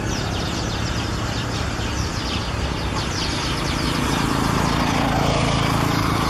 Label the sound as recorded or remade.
recorded